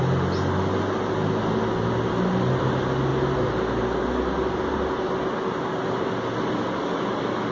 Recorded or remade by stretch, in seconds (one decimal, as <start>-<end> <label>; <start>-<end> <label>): 0.0-7.5 recorded